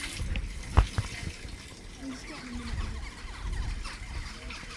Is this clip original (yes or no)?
yes